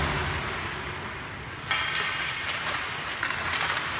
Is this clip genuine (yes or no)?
yes